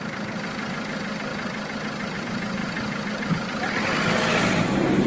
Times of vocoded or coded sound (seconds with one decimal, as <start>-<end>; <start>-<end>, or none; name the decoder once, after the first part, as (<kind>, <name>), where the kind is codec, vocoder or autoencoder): none